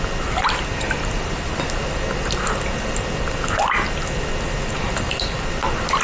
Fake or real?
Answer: real